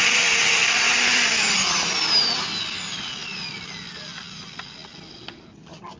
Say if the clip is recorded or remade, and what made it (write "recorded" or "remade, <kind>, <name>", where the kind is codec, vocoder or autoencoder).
recorded